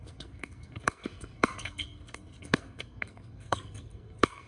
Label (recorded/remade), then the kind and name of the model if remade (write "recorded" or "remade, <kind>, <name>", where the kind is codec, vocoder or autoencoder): remade, codec, SNAC